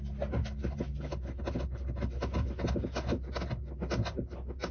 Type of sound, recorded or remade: recorded